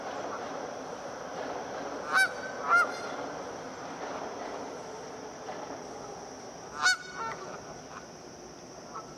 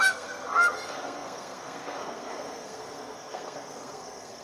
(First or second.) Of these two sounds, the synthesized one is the second